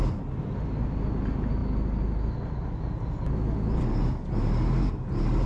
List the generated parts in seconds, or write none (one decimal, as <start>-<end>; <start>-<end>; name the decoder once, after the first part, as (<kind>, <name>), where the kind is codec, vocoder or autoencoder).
none